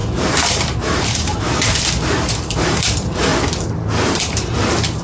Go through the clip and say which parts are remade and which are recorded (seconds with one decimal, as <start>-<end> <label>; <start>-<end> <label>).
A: 0.0-3.3 remade; 3.3-4.3 recorded; 4.3-5.0 remade